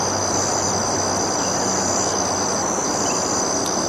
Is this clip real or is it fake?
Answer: real